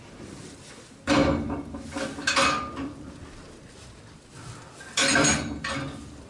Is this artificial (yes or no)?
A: no